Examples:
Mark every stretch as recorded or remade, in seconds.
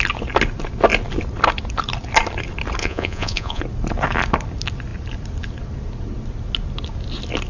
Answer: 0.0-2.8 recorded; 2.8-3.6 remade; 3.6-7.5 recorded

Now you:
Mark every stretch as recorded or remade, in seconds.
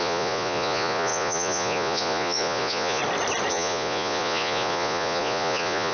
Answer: 0.0-3.0 remade; 3.0-3.5 recorded; 3.5-5.9 remade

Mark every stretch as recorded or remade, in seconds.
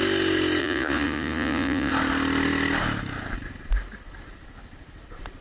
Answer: 0.0-0.6 recorded; 0.6-1.9 remade; 1.9-5.4 recorded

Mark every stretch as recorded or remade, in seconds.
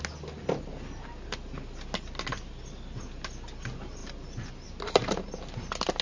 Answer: 0.0-6.0 recorded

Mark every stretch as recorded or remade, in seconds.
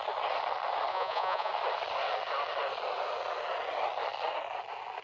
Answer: 0.0-0.9 recorded; 0.9-1.5 remade; 1.5-5.0 recorded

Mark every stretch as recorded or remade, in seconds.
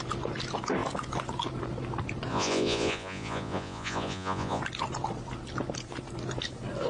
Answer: 0.0-2.3 recorded; 2.3-4.6 remade; 4.6-6.9 recorded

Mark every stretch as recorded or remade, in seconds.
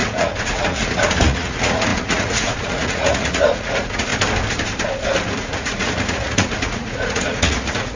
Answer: 0.0-4.1 remade; 4.1-5.4 recorded; 5.4-8.0 remade